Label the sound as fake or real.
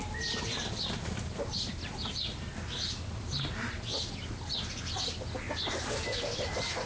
real